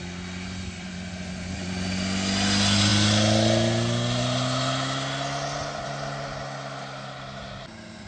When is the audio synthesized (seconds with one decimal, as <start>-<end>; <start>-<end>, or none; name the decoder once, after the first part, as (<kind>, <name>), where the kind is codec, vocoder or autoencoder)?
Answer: none